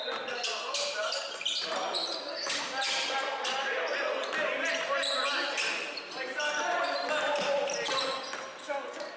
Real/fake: real